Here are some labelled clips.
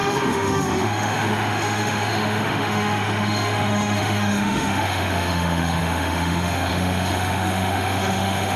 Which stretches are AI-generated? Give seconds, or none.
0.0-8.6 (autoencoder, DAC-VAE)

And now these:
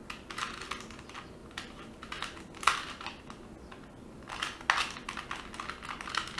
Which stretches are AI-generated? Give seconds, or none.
1.4-2.8 (vocoder, BigVGAN v2)

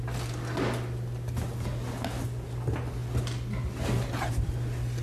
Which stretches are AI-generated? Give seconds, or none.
none

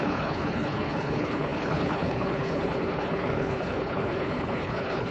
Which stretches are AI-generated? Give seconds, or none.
0.0-5.1 (codec, HILCodec)

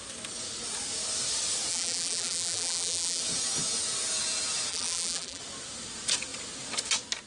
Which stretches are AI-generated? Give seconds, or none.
1.7-3.2 (vocoder, BigVGAN v2); 4.7-5.4

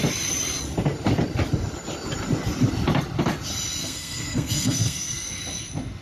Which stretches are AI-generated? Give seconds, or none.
3.8-5.3 (codec, SNAC)